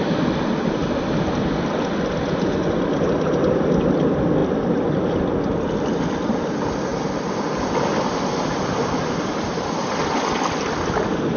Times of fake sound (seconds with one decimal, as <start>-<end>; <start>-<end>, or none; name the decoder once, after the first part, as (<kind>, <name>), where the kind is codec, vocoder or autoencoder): none